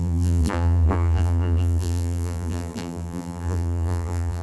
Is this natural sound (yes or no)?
no